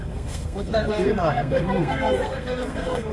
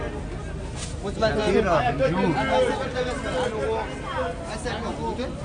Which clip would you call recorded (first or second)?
second